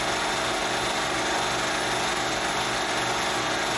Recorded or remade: recorded